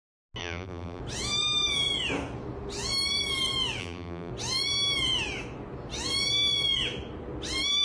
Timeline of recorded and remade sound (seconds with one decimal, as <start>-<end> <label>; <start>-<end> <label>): 0.0-0.4 recorded; 0.4-1.0 remade; 1.0-3.8 recorded; 3.8-4.3 remade; 4.3-7.8 recorded